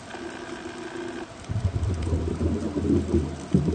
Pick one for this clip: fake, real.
fake